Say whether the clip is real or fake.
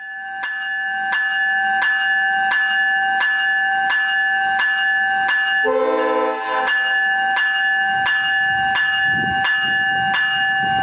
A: real